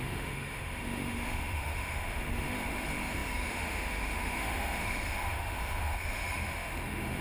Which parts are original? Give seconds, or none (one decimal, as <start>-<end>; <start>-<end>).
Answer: none